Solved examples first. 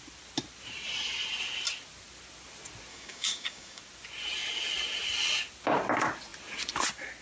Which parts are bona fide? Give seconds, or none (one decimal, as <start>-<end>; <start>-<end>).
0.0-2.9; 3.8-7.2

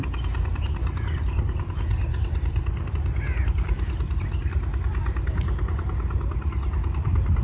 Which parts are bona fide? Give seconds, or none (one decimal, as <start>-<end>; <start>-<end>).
0.0-5.0; 5.6-7.4

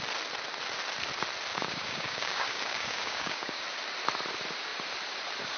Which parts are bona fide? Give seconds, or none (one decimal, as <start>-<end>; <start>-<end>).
0.0-1.5; 3.6-5.6